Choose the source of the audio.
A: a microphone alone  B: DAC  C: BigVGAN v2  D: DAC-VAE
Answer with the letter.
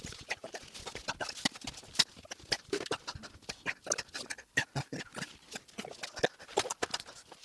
A